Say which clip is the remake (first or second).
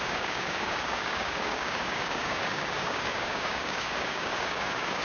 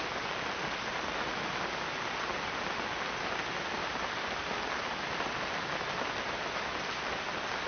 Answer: first